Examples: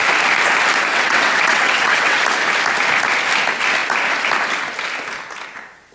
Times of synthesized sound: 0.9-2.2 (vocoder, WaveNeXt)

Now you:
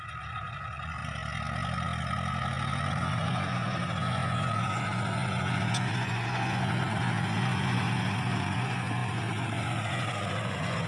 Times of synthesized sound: 0.0-1.0 (vocoder, Vocos); 2.9-10.9